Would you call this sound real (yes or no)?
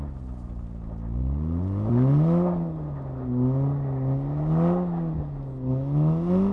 yes